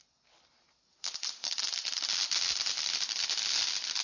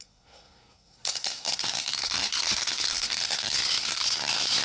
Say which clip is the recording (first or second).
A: first